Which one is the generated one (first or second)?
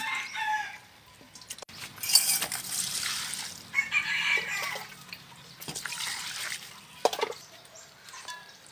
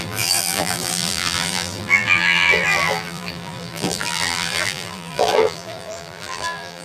second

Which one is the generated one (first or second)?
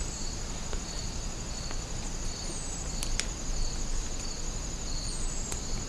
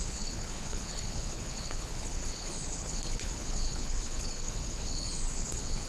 second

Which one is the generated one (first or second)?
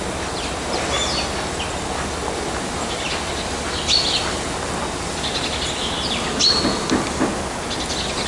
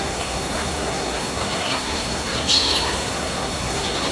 second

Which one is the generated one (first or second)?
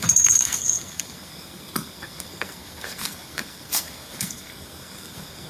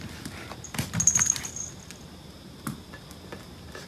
first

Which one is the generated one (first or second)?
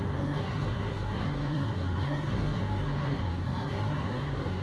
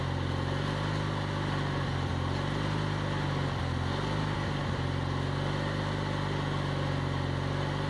first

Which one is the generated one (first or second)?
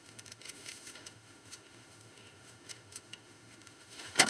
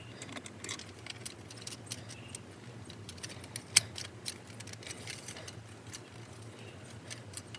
first